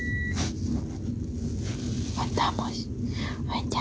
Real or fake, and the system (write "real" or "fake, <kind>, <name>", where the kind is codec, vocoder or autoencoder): real